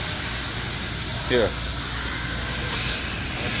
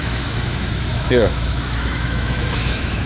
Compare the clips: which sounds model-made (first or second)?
second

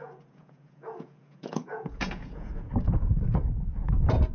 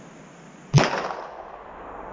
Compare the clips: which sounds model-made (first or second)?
first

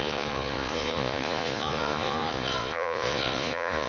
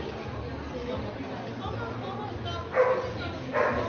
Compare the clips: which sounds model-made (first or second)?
first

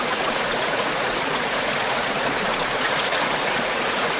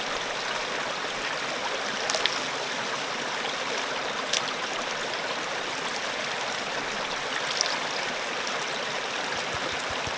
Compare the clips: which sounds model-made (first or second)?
first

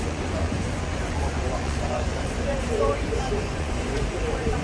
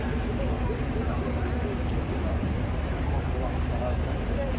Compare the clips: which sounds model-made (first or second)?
first